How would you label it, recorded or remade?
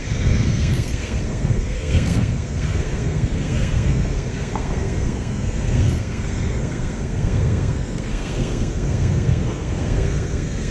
remade